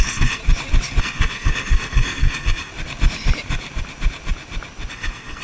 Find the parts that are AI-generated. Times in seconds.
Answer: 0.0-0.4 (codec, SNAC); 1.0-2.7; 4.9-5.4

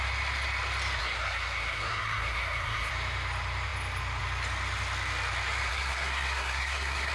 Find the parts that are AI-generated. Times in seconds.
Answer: 1.0-2.9 (codec, SNAC); 5.7-7.1

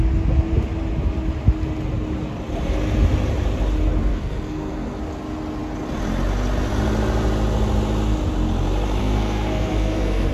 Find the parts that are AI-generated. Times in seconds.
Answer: 4.1-5.0 (codec, SNAC); 9.0-10.3